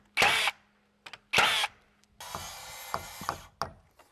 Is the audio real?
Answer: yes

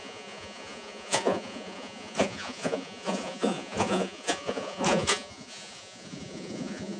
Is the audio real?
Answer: no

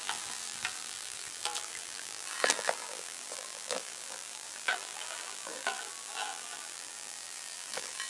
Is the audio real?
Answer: no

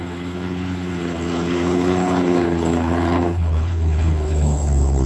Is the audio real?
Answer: no